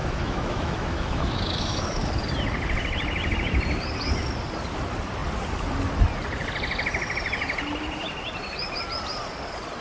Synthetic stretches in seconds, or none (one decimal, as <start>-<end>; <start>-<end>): 0.0-2.1